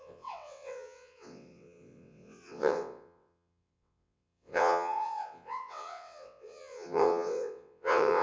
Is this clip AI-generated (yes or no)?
yes